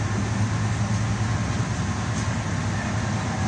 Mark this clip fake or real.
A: real